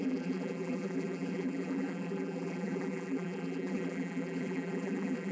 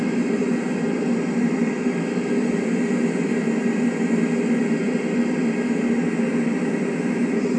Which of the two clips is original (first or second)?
second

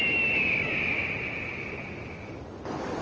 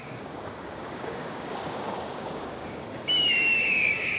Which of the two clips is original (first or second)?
first